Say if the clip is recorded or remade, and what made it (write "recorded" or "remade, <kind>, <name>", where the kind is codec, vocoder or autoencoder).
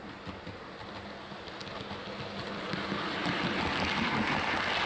recorded